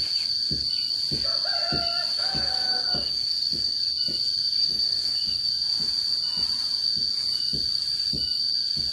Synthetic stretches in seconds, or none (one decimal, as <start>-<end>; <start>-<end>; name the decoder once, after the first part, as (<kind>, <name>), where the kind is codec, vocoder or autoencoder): 2.1-3.8 (codec, DAC); 4.6-5.5